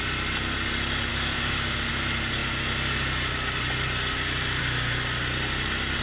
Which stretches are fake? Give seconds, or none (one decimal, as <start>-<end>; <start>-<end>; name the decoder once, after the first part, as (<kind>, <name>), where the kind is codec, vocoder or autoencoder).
1.1-1.9 (codec, DAC)